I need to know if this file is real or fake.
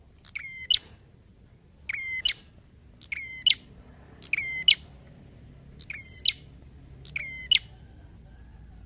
real